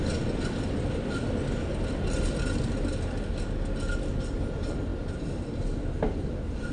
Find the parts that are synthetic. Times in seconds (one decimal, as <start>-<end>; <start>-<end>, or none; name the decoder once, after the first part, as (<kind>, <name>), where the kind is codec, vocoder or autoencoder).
none